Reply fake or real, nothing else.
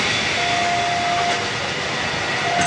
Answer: real